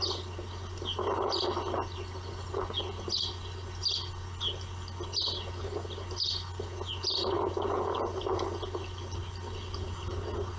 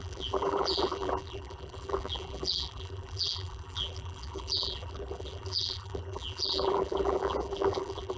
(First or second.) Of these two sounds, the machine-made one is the second